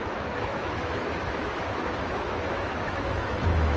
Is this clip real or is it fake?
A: fake